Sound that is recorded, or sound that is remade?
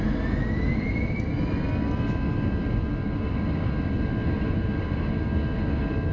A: recorded